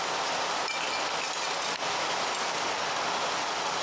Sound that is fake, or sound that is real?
real